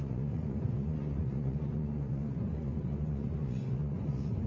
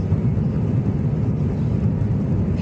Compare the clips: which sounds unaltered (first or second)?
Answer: second